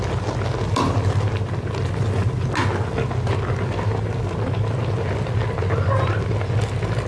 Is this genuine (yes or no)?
yes